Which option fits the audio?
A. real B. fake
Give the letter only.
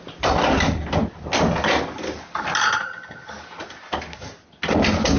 A